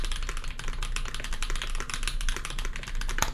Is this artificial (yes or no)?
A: no